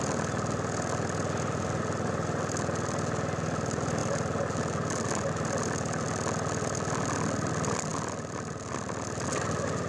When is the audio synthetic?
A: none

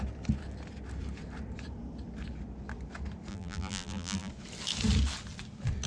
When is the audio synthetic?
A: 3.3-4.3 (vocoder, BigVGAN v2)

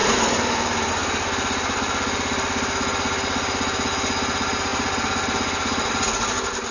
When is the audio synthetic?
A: 0.0-0.9 (vocoder, BigVGAN v2)